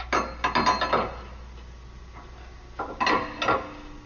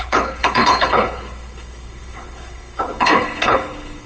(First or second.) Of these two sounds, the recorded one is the first